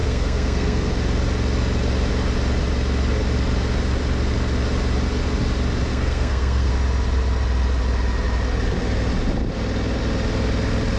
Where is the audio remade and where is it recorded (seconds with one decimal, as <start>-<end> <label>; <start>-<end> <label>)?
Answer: 0.0-0.9 remade; 0.9-5.9 recorded; 5.9-6.7 remade; 6.7-11.0 recorded